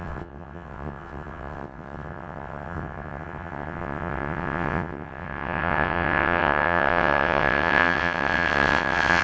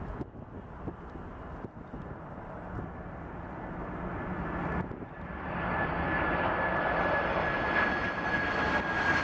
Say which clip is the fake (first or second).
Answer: first